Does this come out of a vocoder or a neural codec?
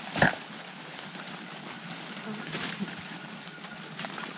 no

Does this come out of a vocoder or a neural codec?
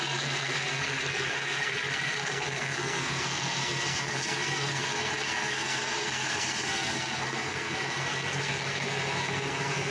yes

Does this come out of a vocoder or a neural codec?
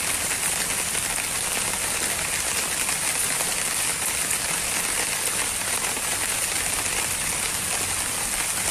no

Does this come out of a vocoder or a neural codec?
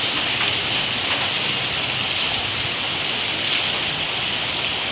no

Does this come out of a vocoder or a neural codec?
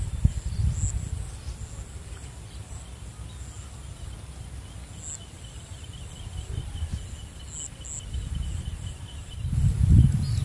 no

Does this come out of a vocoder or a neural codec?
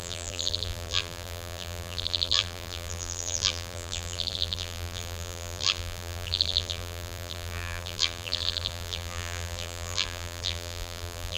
yes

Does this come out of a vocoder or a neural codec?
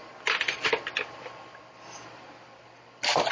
no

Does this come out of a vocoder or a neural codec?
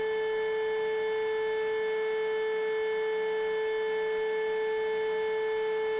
no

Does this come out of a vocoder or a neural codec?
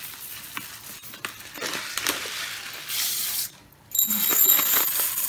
no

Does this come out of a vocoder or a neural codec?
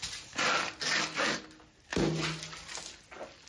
no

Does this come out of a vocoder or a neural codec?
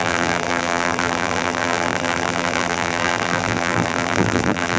yes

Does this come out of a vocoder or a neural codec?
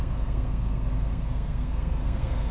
yes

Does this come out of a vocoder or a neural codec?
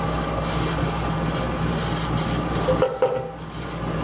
no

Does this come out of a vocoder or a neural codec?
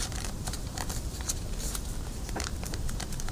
yes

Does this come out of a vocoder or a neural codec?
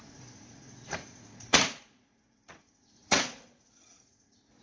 yes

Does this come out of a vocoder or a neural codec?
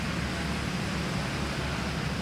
no